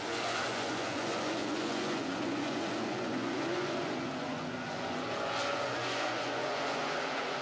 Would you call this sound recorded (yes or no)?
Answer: no